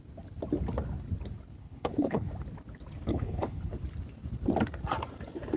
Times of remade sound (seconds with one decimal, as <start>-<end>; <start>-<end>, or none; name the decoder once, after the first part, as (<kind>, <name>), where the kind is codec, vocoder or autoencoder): 1.6-2.3 (codec, HILCodec); 3.1-3.7